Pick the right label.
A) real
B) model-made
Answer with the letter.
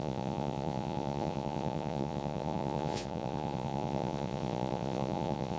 B